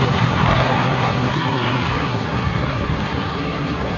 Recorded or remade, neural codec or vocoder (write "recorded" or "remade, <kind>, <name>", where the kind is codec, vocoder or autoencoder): remade, codec, SNAC